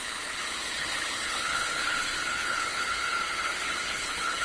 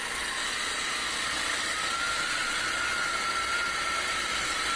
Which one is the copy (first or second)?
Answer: first